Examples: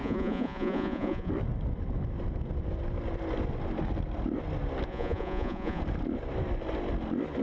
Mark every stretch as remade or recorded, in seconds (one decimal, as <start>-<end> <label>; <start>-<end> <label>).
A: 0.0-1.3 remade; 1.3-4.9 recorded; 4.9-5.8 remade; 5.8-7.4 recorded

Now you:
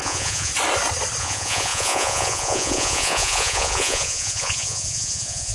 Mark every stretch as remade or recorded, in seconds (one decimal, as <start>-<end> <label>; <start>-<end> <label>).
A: 0.0-0.5 remade; 0.5-1.2 recorded; 1.2-5.5 remade

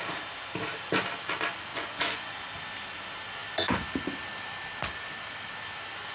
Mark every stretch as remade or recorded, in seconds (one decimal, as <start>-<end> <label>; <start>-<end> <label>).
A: 0.0-1.7 recorded; 1.7-2.3 remade; 2.3-6.1 recorded